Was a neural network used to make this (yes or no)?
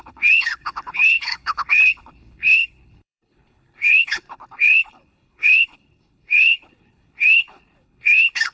yes